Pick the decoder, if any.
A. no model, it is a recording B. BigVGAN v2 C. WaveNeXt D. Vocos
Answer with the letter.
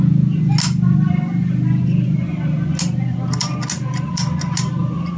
A